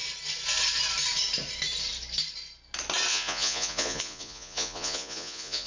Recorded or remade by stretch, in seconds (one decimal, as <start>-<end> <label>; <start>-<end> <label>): 0.0-3.1 recorded; 3.1-5.7 remade